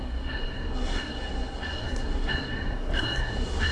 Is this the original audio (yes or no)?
no